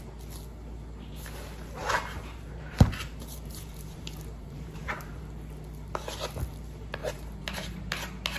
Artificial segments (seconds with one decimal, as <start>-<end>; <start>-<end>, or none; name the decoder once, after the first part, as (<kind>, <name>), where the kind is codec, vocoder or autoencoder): 1.8-5.2 (vocoder, BigVGAN v2); 7.0-7.9